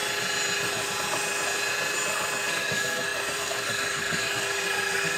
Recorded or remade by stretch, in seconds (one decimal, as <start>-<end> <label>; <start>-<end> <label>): 0.0-2.5 recorded; 2.5-5.2 remade